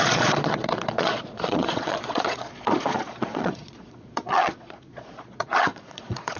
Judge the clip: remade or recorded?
remade